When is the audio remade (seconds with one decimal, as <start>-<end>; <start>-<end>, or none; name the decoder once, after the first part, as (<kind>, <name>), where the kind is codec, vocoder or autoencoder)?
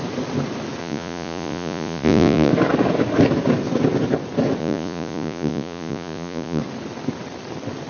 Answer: 0.8-2.5 (vocoder, Vocos); 4.6-6.6